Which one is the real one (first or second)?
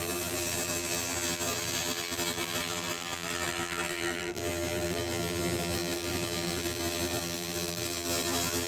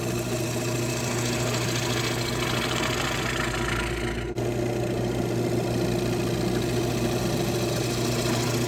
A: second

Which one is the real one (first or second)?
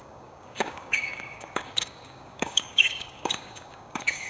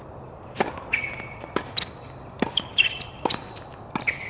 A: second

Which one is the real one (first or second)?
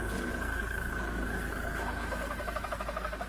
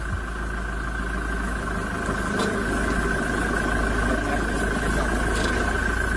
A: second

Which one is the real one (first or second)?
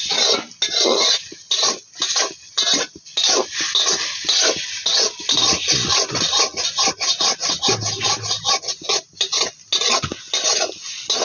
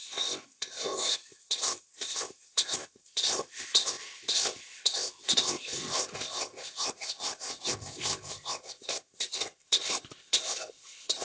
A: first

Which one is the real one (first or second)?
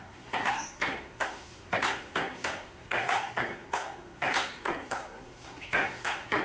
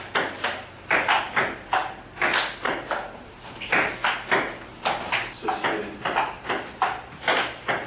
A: second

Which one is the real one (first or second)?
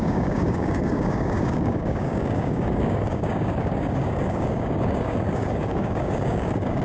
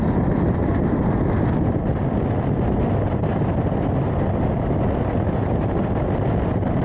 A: second